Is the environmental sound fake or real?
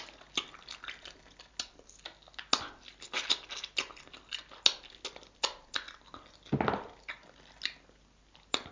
real